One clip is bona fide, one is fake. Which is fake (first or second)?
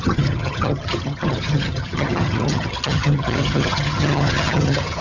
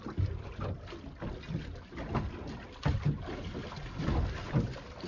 first